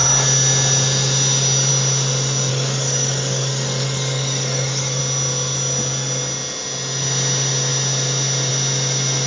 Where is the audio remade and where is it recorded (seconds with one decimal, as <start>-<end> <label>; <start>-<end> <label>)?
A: 0.0-2.5 recorded; 2.5-5.0 remade; 5.0-9.3 recorded